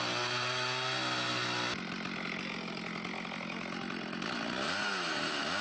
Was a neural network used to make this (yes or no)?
no